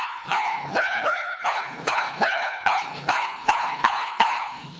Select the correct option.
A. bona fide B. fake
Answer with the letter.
B